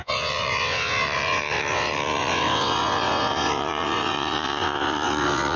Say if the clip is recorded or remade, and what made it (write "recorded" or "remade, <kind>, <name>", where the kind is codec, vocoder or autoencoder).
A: remade, vocoder, WaveNeXt